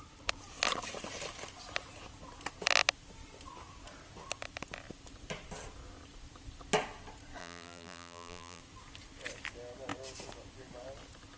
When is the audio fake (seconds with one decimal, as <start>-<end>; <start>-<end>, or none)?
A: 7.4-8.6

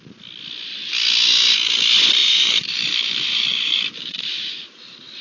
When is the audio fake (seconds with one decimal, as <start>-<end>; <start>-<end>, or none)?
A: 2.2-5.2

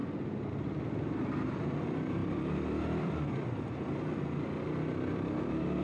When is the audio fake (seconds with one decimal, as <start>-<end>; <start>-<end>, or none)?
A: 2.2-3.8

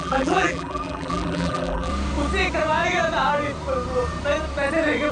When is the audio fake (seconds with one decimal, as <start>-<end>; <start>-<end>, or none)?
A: 0.0-1.9